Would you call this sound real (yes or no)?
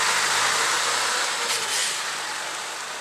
yes